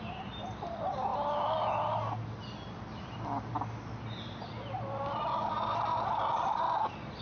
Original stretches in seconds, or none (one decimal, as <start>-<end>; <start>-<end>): 1.1-2.5; 3.5-5.5